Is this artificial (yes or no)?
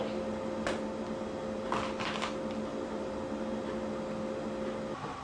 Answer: no